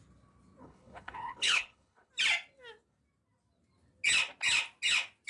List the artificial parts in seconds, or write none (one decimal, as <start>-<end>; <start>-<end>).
0.6-2.1